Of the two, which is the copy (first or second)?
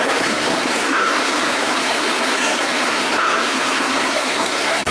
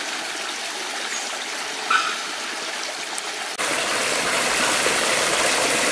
first